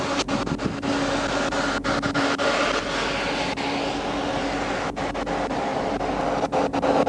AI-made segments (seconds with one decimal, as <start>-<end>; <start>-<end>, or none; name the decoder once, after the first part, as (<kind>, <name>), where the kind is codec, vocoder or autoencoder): none